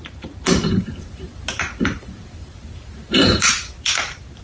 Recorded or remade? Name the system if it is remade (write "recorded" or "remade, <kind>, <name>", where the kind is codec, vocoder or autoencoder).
remade, vocoder, BigVGAN v2